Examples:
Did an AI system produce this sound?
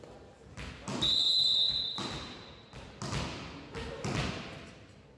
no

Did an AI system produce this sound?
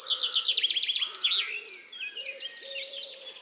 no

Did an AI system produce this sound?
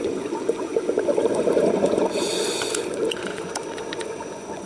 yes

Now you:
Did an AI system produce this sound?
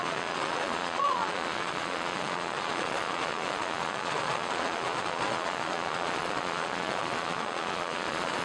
yes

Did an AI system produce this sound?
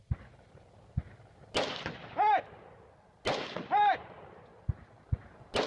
no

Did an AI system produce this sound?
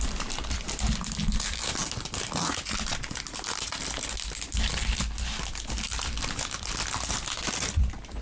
no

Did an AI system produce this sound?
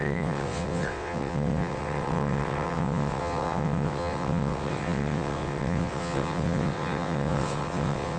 yes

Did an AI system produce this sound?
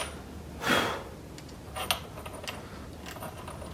no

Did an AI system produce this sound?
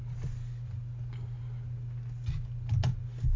no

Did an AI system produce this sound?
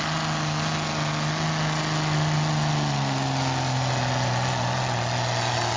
no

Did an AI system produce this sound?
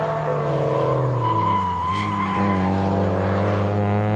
no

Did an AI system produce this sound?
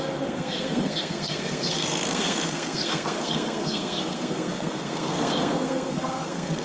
yes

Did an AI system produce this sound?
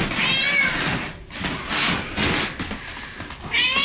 no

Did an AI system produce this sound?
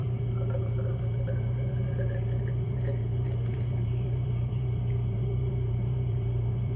yes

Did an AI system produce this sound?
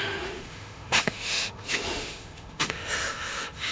yes